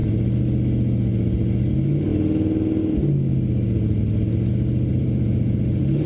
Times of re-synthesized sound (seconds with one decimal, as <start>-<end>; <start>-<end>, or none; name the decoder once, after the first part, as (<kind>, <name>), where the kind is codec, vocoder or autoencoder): 4.9-6.1 (vocoder, BigVGAN v2)